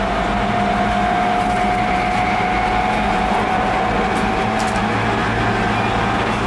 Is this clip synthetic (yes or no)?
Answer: no